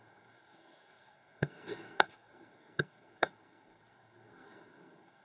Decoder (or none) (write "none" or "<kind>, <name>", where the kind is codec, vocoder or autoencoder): codec, SNAC